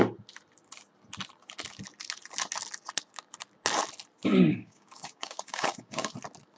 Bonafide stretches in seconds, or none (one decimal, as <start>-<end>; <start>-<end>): 0.0-4.3; 6.1-6.6